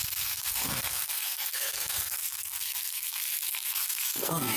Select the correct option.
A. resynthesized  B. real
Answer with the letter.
A